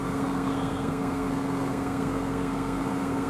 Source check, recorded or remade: remade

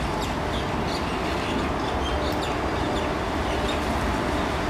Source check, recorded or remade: recorded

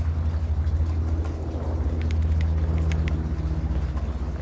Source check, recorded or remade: recorded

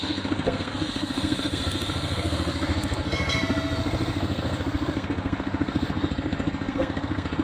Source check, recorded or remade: remade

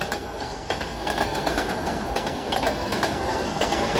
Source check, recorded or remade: remade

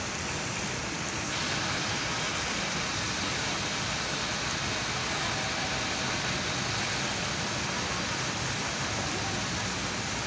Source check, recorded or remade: recorded